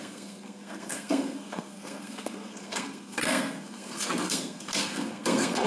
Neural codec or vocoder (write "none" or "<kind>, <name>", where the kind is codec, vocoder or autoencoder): codec, SNAC